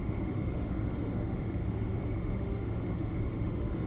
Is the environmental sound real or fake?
fake